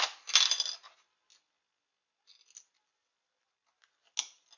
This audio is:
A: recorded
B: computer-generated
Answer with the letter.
A